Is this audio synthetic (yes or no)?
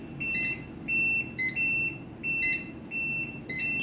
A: no